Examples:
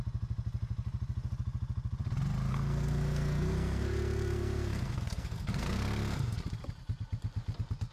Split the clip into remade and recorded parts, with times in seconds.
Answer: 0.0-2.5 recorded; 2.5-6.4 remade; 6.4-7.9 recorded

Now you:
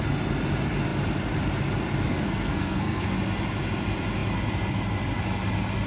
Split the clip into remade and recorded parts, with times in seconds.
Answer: 0.0-2.1 recorded; 2.1-3.1 remade; 3.1-5.9 recorded

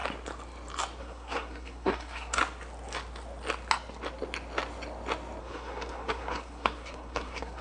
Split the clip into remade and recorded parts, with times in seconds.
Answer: 0.0-1.0 recorded; 1.0-2.4 remade; 2.4-5.4 recorded; 5.4-7.6 remade

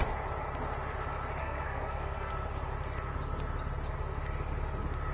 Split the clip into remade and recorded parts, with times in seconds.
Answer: 0.0-1.4 recorded; 1.4-2.3 remade; 2.3-5.1 recorded

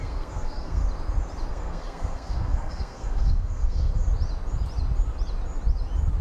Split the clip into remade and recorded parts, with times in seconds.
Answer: 0.0-0.8 remade; 0.8-1.5 recorded; 1.5-3.9 remade; 3.9-6.2 recorded

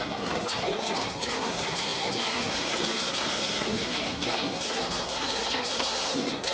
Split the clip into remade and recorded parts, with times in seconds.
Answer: 0.0-6.5 remade